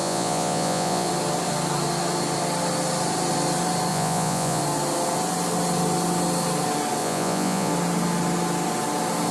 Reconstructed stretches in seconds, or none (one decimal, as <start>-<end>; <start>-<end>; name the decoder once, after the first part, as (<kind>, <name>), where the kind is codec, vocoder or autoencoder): 0.0-1.1 (vocoder, Vocos); 3.9-4.6; 7.0-7.7